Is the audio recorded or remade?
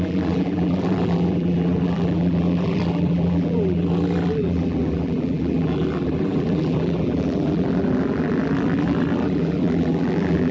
remade